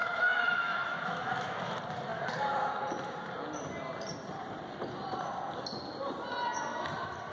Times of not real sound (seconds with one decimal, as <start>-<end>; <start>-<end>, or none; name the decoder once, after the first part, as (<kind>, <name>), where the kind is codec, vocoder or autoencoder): 0.0-1.7 (autoencoder, DAC-VAE)